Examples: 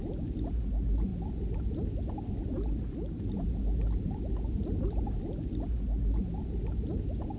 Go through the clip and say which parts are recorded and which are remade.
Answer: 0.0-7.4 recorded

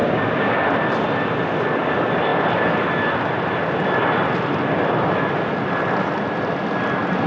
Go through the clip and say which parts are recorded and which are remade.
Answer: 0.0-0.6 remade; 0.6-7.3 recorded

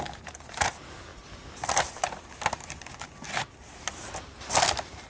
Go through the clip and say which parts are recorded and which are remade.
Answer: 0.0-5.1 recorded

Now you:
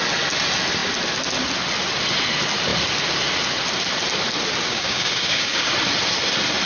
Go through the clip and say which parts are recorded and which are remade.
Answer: 0.0-4.7 recorded; 4.7-5.7 remade; 5.7-6.7 recorded